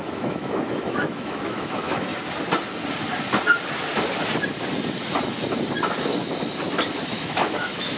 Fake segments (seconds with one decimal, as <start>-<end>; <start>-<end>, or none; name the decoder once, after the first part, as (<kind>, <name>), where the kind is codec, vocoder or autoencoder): 0.0-2.1 (autoencoder, DAC-VAE); 6.9-8.0